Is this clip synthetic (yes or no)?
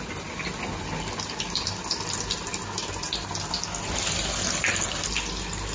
no